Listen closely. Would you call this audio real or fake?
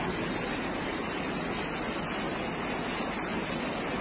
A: real